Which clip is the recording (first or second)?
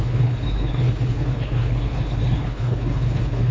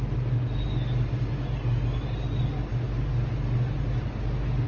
second